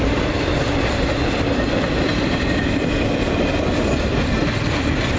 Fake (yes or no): yes